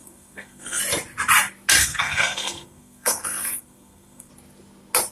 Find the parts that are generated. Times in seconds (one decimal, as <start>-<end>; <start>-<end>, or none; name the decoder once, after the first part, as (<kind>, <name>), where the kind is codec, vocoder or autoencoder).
0.0-0.8 (codec, SNAC); 1.8-4.3